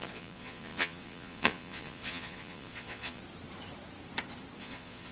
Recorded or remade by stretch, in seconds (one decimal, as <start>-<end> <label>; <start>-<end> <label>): 0.0-3.2 remade; 3.2-4.6 recorded; 4.6-5.1 remade